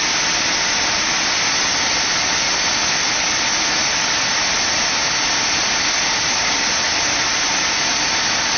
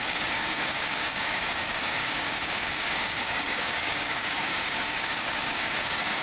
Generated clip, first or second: second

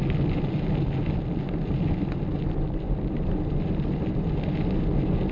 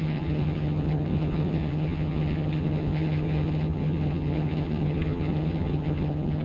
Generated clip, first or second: second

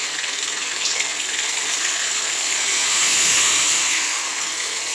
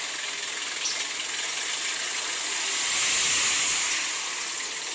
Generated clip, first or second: first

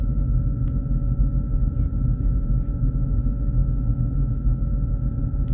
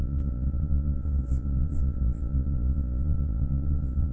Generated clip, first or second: second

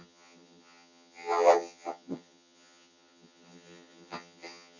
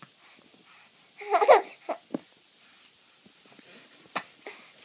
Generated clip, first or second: first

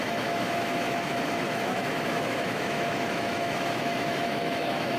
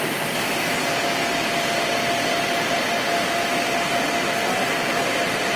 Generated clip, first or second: first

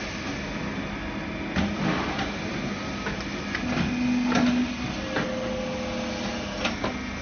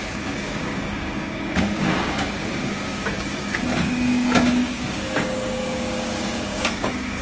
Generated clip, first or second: second